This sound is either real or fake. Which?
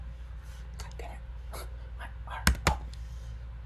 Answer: real